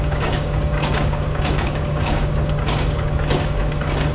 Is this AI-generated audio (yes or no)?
yes